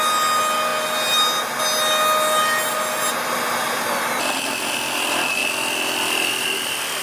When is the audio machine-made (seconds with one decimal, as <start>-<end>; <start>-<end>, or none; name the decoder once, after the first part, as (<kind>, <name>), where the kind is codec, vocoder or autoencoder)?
none

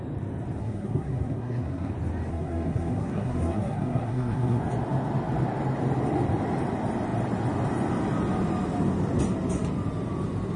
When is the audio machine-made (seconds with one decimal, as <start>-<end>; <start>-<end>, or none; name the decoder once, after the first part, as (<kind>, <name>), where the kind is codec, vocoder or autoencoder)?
0.6-1.9 (codec, SNAC); 2.3-4.6

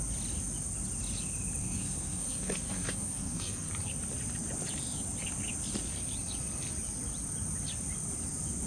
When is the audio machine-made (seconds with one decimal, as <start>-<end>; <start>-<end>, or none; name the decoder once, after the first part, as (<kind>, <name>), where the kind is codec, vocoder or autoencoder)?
1.6-3.7 (codec, SNAC)

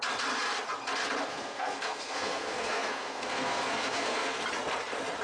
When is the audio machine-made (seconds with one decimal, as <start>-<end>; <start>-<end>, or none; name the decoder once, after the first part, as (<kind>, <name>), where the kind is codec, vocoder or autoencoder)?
1.3-4.4 (codec, SNAC)

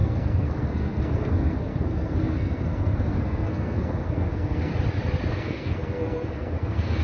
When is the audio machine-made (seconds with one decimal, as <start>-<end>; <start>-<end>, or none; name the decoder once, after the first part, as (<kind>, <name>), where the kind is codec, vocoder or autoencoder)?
0.0-4.7 (codec, SNAC); 5.3-7.0

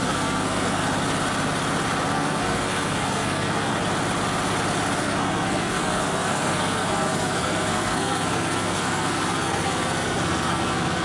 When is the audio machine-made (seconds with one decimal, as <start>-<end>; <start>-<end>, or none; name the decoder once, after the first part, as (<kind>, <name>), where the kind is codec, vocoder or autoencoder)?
0.0-0.8 (codec, SNAC); 2.1-3.8; 5.0-11.0

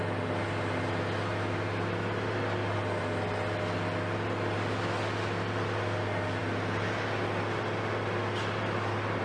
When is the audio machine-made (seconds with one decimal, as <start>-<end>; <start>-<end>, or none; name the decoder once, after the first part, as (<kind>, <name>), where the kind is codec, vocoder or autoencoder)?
none

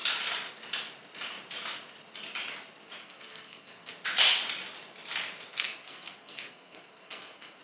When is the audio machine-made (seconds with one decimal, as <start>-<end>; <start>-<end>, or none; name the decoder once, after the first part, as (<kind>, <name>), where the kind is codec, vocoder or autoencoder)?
3.0-3.9 (codec, SNAC); 5.5-7.6